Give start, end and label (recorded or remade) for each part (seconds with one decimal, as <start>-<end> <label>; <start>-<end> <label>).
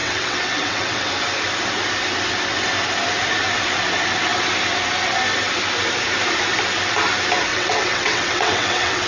0.0-1.1 remade; 1.1-7.5 recorded; 7.5-9.1 remade